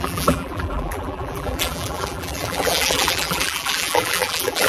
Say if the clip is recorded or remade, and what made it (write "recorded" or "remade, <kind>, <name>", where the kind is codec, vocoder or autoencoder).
remade, vocoder, BigVGAN v2